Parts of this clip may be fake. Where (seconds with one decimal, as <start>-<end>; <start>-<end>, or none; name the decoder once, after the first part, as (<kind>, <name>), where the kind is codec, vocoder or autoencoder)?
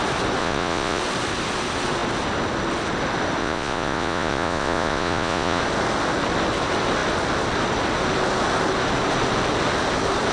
0.4-1.0 (vocoder, Vocos); 3.4-5.6